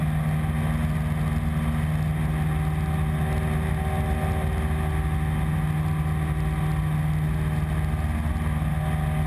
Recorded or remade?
recorded